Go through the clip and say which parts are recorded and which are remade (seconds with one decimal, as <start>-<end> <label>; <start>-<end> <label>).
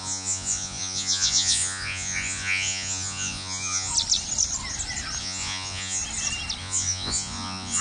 0.0-3.9 remade; 3.9-5.2 recorded; 5.2-6.0 remade; 6.0-6.6 recorded; 6.6-7.8 remade